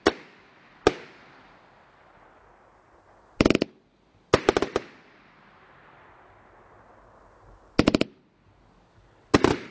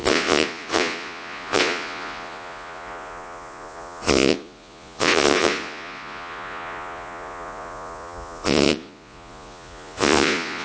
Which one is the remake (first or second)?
second